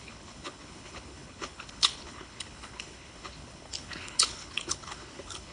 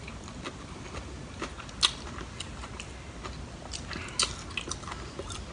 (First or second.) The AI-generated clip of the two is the first